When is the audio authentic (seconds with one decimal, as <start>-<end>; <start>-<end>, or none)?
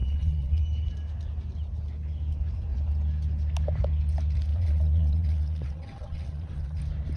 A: 0.6-4.5; 6.8-7.2